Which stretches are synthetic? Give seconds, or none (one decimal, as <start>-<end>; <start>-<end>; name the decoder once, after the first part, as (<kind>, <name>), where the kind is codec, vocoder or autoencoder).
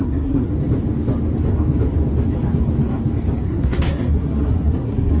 0.0-0.5 (codec, SNAC); 3.4-5.2